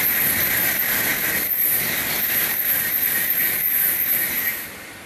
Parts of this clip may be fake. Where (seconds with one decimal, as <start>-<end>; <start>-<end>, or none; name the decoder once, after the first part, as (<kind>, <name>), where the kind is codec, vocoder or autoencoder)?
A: none